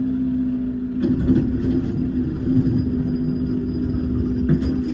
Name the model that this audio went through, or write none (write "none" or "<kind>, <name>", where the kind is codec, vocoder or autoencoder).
none